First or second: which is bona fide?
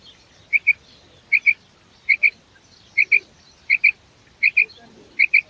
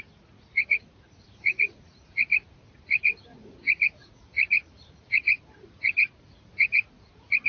first